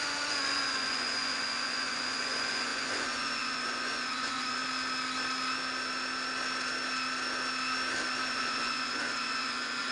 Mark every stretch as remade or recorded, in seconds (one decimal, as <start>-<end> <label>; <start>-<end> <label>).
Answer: 0.0-4.6 remade; 4.6-8.3 recorded; 8.3-9.9 remade